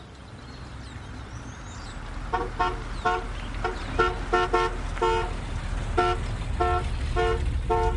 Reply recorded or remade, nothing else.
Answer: recorded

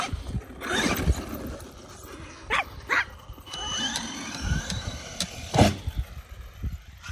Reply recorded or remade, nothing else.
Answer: recorded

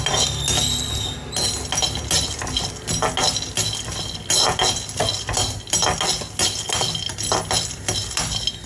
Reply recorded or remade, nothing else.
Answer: recorded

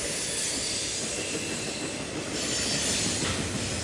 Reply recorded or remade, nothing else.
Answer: recorded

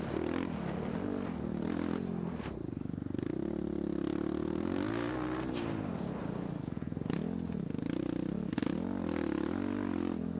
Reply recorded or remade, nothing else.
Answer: recorded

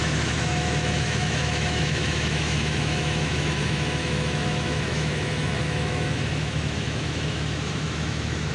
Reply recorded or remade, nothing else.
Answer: remade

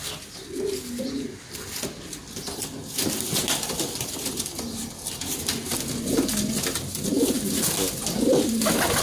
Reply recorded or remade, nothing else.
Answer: recorded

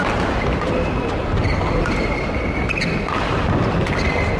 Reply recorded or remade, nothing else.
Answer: recorded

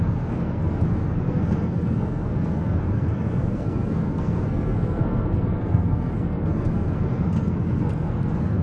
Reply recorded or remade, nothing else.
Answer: remade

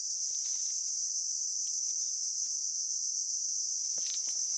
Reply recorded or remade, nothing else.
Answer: recorded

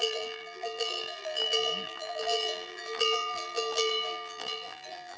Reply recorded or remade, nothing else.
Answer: remade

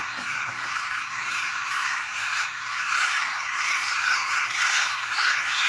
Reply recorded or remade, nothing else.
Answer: remade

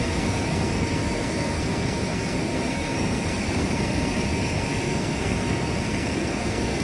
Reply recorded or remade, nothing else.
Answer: remade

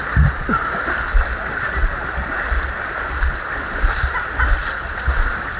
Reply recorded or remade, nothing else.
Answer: recorded